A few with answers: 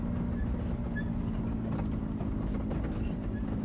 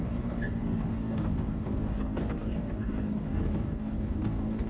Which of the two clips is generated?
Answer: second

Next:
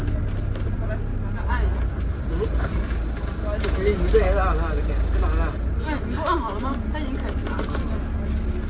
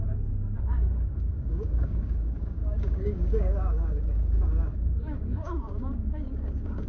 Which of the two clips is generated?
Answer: second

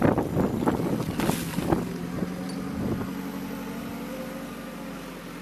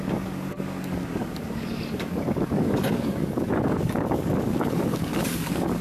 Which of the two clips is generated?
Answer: second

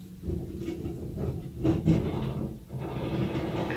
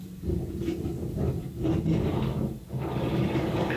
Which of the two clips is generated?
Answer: second